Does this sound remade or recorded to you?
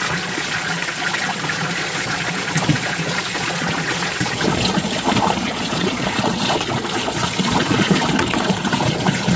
remade